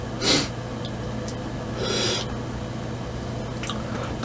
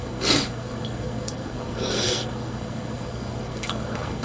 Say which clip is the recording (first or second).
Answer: first